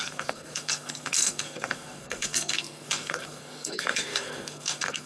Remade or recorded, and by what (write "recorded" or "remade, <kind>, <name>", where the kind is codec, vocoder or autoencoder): remade, codec, SNAC